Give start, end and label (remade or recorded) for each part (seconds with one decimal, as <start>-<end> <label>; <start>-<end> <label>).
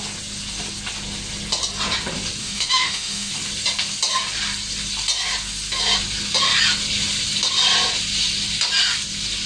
0.0-2.4 recorded; 2.4-3.3 remade; 3.3-9.5 recorded